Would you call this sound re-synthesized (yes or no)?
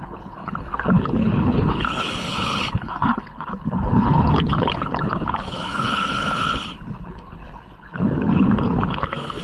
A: yes